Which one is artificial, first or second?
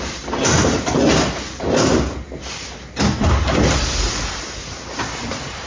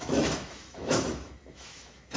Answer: second